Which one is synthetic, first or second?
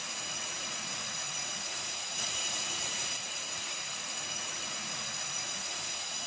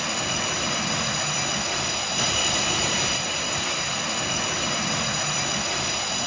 first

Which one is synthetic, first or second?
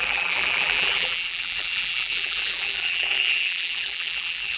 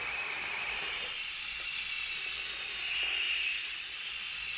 first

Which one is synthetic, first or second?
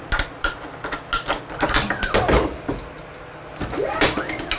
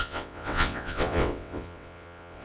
second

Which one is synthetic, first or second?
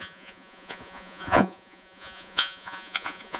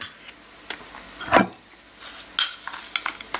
first